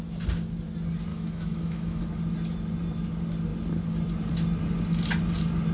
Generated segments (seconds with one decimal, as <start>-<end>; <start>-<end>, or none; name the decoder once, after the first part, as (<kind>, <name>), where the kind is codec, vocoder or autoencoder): 1.1-2.0 (autoencoder, DAC-VAE)